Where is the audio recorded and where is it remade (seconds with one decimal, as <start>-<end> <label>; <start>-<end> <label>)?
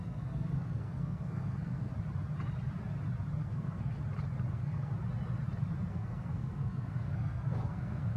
0.0-1.9 remade; 1.9-3.4 recorded; 3.4-3.9 remade; 3.9-4.5 recorded; 4.5-4.9 remade; 4.9-5.9 recorded; 5.9-8.2 remade